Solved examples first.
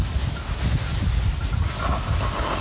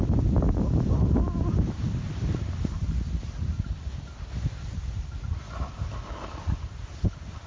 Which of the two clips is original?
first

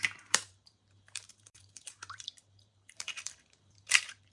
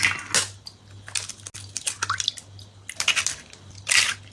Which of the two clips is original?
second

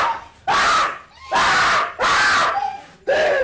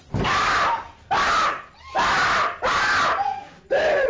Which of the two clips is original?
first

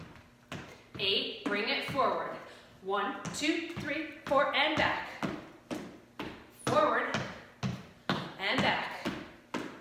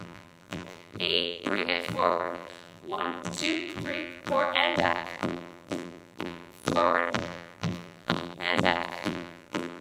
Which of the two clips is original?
first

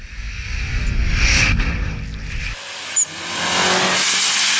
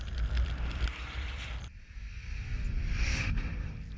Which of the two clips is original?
first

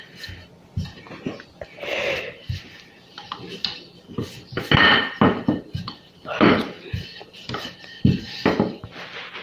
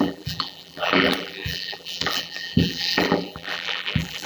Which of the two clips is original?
first